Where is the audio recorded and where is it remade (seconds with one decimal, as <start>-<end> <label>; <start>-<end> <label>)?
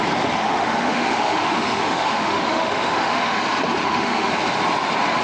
0.0-0.4 recorded; 0.4-3.4 remade; 3.4-3.8 recorded; 3.8-4.3 remade; 4.3-5.2 recorded